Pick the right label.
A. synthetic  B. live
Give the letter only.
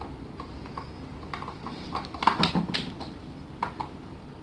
B